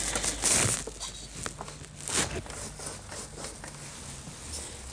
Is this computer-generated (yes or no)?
no